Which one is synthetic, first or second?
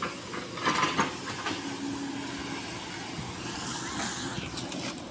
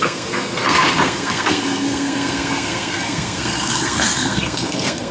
second